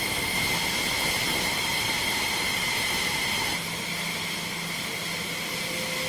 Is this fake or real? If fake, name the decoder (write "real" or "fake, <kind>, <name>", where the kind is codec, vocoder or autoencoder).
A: real